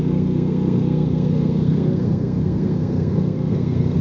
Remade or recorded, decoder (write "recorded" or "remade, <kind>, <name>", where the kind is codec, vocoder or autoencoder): remade, codec, SNAC